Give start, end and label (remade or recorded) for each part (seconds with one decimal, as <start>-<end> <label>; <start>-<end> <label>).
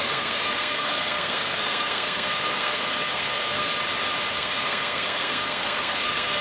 0.0-3.7 remade; 3.7-4.3 recorded; 4.3-6.4 remade